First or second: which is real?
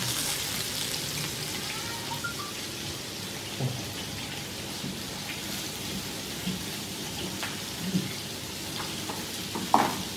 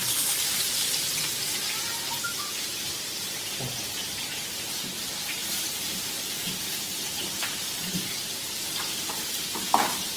first